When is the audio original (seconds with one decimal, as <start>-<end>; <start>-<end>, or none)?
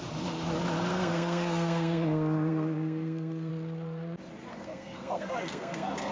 0.0-0.9; 3.5-4.5